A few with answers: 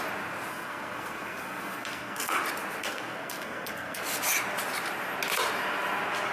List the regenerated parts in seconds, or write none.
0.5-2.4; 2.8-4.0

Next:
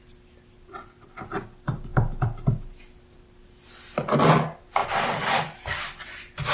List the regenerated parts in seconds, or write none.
none

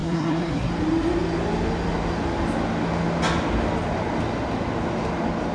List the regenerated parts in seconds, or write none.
0.0-0.7

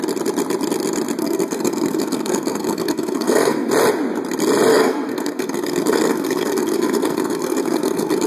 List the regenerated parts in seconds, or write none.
1.2-3.7; 4.7-8.3

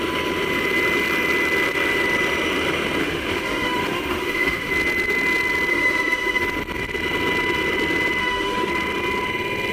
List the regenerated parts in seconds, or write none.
3.0-4.7; 5.7-6.4; 8.2-8.7

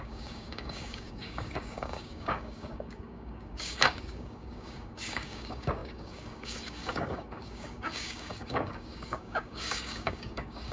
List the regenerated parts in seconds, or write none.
0.0-10.7

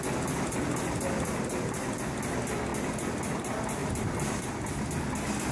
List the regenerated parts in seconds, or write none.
3.8-4.4